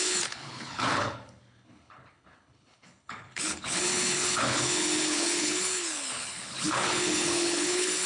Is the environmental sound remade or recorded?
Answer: remade